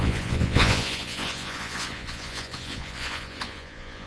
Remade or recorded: remade